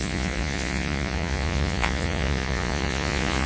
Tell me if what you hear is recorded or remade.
remade